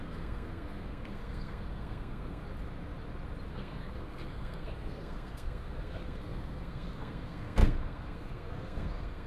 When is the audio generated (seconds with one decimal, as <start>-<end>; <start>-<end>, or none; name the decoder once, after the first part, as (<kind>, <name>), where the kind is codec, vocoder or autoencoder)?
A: 0.0-2.4 (codec, SNAC); 3.5-9.3